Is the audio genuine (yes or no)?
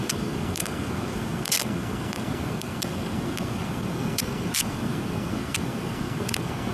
no